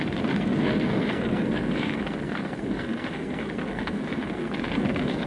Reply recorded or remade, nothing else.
remade